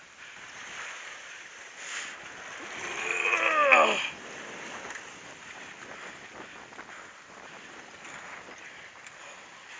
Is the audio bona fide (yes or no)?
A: yes